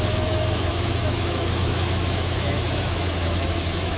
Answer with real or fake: fake